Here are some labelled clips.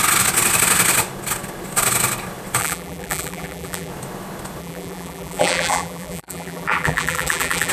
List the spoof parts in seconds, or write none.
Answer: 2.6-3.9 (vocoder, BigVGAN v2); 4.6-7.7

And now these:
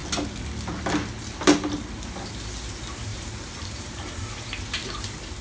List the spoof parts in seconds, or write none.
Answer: 3.1-4.3 (vocoder, BigVGAN v2)

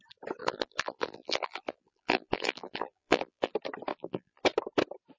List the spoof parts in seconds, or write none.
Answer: 0.4-3.5 (vocoder, BigVGAN v2); 3.9-4.4

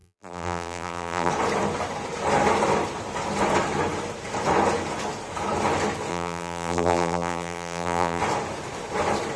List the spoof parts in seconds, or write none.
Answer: 0.0-1.3 (vocoder, BigVGAN v2); 6.1-8.2

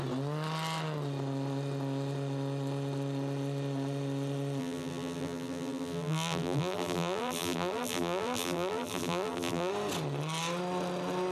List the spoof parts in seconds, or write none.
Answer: 4.6-9.7 (vocoder, BigVGAN v2)